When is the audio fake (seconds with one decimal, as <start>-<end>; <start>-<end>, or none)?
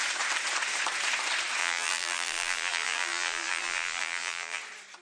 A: 1.6-4.6